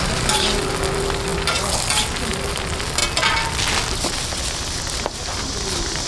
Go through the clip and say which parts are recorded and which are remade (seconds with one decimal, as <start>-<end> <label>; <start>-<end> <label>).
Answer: 0.0-6.1 recorded